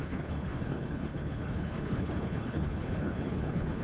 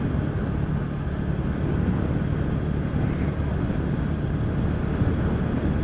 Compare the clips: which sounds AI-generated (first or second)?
first